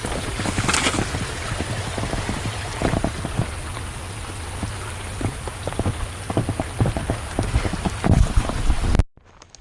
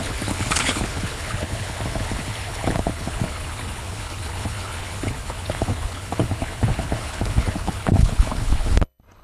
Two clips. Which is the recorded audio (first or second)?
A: first